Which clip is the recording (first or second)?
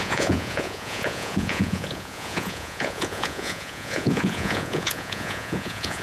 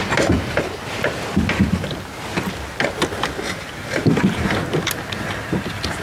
second